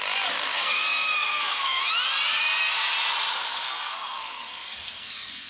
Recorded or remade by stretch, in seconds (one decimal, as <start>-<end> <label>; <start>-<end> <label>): 0.0-0.5 recorded; 0.5-1.8 remade; 1.8-3.5 recorded; 3.5-5.5 remade